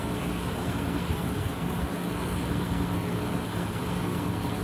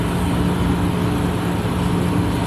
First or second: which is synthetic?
first